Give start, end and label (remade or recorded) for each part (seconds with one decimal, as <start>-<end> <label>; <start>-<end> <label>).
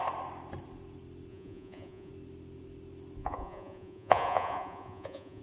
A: 0.0-1.3 recorded; 1.3-2.1 remade; 2.1-3.2 recorded; 3.2-5.4 remade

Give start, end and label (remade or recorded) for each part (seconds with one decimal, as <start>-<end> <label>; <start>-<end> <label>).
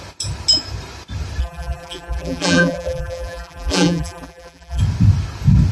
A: 0.0-1.4 recorded; 1.4-4.8 remade; 4.8-5.7 recorded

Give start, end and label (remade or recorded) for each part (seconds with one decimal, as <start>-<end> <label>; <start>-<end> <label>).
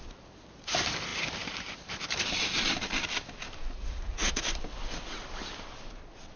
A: 0.0-3.8 recorded; 3.8-4.4 remade; 4.4-6.4 recorded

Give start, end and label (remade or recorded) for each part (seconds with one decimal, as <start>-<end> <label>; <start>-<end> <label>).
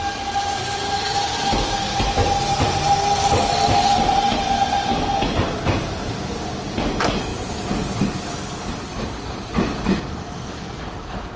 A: 0.0-11.4 recorded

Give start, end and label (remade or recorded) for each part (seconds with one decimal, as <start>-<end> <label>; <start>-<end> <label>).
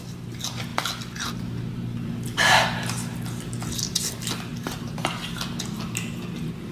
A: 0.0-4.5 recorded; 4.5-5.2 remade; 5.2-6.7 recorded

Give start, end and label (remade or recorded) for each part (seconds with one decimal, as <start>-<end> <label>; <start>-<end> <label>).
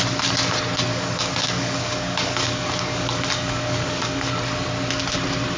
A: 0.0-0.9 recorded; 0.9-4.3 remade; 4.3-5.6 recorded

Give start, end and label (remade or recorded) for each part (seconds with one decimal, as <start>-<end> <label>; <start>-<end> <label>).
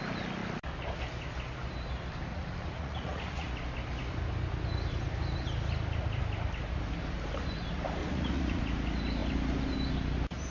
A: 0.0-2.3 recorded; 2.3-3.5 remade; 3.5-8.0 recorded; 8.0-8.6 remade; 8.6-10.5 recorded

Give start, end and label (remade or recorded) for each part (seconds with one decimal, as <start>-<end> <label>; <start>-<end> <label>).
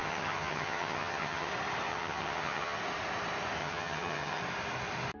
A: 0.0-1.5 remade; 1.5-1.9 recorded; 1.9-2.8 remade; 2.8-3.6 recorded; 3.6-4.4 remade; 4.4-5.2 recorded